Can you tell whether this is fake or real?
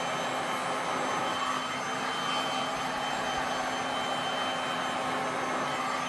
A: real